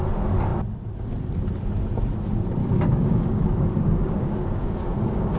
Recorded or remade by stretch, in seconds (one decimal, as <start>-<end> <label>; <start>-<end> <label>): 0.0-2.6 recorded; 2.6-5.4 remade